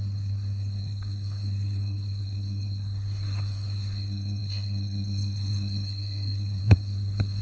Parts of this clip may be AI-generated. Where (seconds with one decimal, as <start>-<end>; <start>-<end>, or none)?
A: 0.0-7.4